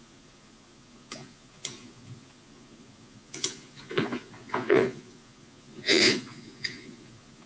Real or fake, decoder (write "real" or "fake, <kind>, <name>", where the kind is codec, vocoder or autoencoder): fake, vocoder, Vocos